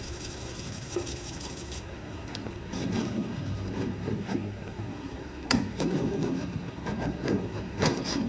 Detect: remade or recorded remade